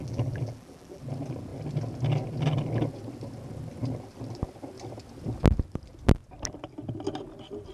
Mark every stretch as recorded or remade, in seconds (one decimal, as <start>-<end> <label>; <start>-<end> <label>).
0.0-1.0 remade; 1.0-7.7 recorded